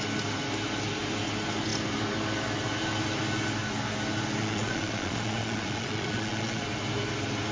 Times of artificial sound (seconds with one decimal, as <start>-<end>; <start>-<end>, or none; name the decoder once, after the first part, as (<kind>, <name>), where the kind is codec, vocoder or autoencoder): 4.4-6.6 (vocoder, Vocos)